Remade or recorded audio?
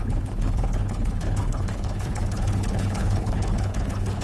remade